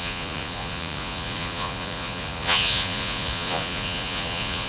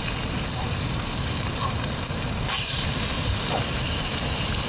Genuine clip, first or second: second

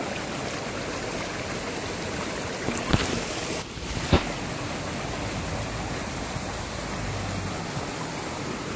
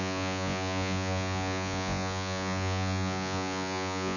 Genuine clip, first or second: first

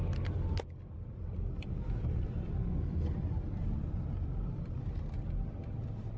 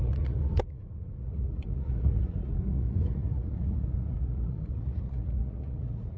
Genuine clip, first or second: first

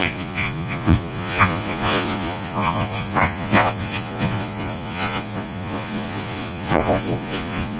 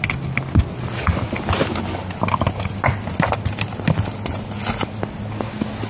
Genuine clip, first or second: second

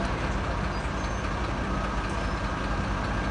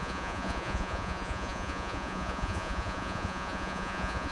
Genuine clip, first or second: first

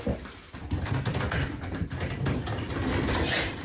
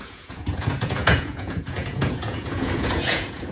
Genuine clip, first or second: first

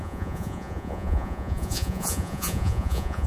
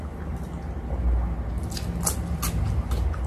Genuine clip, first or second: second